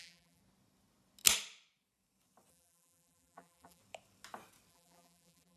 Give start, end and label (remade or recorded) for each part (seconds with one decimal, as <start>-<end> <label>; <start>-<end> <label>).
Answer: 0.0-0.4 remade; 0.4-2.5 recorded; 2.5-3.8 remade; 3.8-4.7 recorded; 4.7-5.6 remade